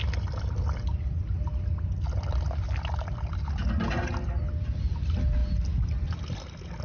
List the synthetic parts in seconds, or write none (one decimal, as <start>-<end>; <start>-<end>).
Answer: none